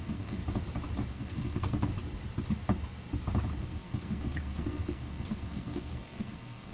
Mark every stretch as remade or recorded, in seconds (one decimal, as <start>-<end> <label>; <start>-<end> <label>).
0.0-0.4 remade; 0.4-1.1 recorded; 1.1-1.9 remade; 1.9-3.6 recorded; 3.6-6.7 remade